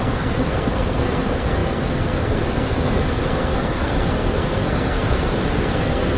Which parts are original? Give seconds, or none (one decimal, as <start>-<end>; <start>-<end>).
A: none

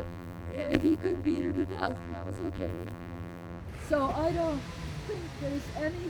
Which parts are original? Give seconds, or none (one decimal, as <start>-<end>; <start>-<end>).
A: 3.6-6.1

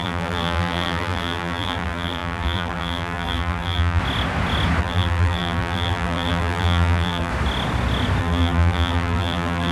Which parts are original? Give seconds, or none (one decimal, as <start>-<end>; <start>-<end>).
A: 4.0-4.8; 7.3-8.2

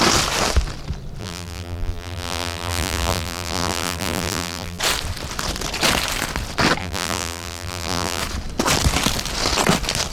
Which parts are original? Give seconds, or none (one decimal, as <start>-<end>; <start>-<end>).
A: 0.0-1.2; 4.8-6.8; 8.2-10.1

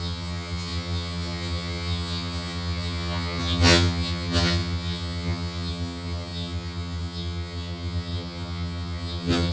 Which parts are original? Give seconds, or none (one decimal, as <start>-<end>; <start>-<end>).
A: none

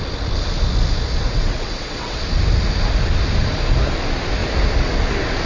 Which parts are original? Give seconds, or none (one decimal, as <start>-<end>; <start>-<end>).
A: 0.0-1.2; 2.2-5.5